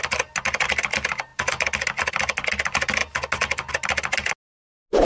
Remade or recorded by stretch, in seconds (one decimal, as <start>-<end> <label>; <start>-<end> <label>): 0.0-5.0 recorded